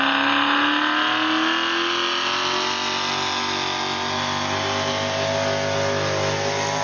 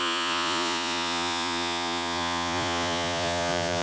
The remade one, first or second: second